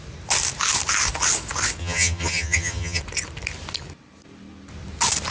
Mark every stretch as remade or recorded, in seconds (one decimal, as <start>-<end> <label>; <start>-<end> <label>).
0.0-1.8 recorded; 1.8-3.0 remade; 3.0-5.3 recorded